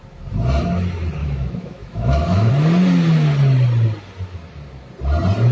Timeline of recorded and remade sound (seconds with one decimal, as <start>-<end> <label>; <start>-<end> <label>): 0.0-1.2 recorded; 1.2-2.5 remade; 2.5-5.5 recorded